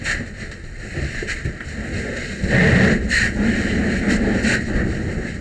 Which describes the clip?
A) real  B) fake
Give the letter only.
A